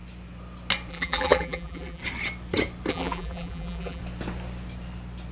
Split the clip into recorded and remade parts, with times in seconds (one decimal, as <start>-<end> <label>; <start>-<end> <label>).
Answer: 0.0-0.9 recorded; 0.9-2.0 remade; 2.0-2.9 recorded; 2.9-4.0 remade; 4.0-5.3 recorded